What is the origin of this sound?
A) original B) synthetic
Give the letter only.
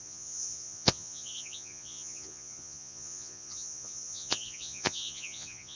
B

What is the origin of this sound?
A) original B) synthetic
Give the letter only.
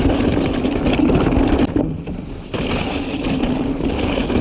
A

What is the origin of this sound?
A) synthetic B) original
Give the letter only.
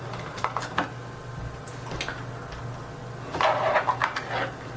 B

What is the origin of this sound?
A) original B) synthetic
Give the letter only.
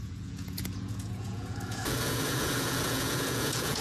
B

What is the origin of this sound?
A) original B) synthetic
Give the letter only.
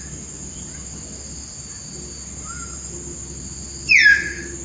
A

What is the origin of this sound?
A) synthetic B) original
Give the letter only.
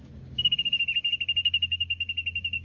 A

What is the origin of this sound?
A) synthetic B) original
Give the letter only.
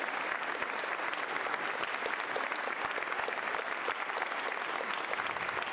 B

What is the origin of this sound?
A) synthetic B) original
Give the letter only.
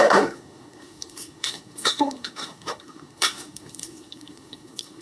A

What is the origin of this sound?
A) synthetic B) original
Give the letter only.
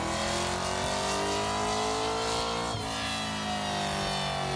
B